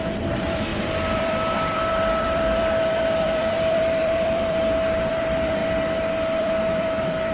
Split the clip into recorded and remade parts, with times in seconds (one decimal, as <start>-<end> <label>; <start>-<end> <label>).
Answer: 0.0-5.6 remade; 5.6-6.4 recorded; 6.4-7.3 remade